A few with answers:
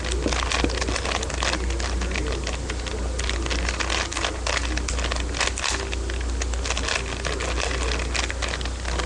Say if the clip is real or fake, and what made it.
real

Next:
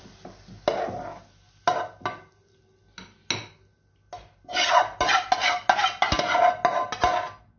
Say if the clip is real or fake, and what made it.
real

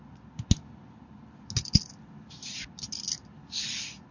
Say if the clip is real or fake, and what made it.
real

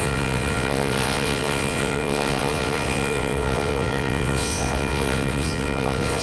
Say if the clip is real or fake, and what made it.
fake, vocoder, WaveNeXt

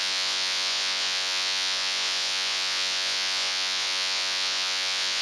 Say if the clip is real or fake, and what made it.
fake, vocoder, Vocos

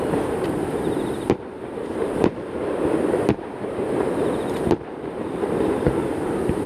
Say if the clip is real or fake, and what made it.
fake, vocoder, BigVGAN v2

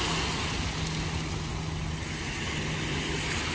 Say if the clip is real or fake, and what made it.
real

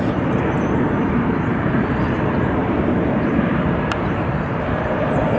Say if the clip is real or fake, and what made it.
fake, vocoder, BigVGAN v2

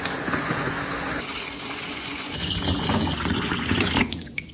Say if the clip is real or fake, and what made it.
fake, vocoder, Vocos